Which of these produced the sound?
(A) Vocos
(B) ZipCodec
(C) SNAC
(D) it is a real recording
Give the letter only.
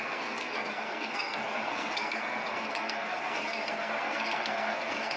C